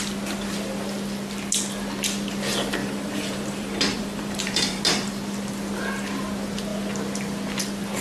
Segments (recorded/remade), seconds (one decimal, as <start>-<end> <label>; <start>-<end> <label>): 0.0-2.8 recorded; 2.8-4.8 remade; 4.8-8.0 recorded